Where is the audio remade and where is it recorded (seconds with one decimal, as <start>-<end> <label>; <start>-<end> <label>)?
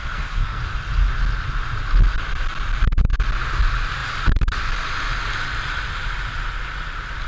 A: 0.0-0.6 remade; 0.6-7.3 recorded